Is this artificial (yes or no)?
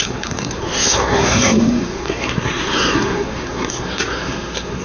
yes